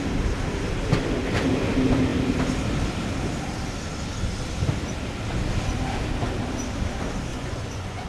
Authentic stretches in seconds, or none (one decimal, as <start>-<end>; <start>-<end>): 0.0-7.3